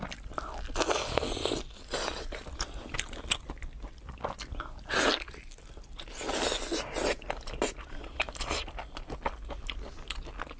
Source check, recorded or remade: recorded